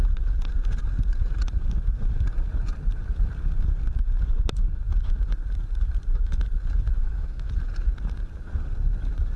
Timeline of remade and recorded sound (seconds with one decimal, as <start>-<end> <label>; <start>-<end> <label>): 0.0-7.0 recorded; 7.0-7.5 remade; 7.5-9.4 recorded